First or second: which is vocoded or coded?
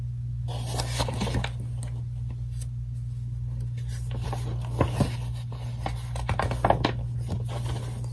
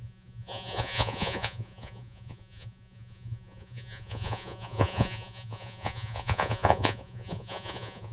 second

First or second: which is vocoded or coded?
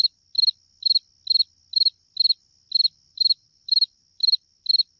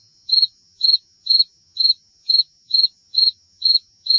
second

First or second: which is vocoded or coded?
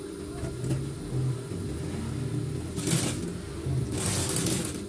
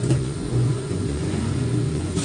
second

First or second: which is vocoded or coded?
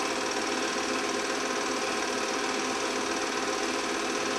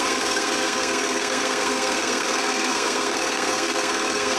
second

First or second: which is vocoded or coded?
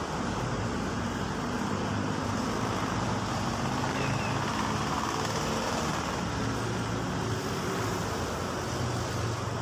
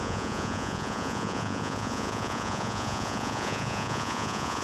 second